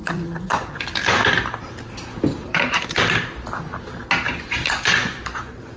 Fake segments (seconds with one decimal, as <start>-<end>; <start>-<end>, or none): 0.0-0.9; 4.4-5.8